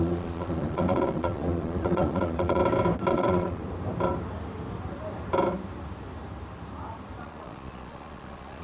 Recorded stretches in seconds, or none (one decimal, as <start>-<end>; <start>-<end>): 2.6-3.1; 3.6-7.2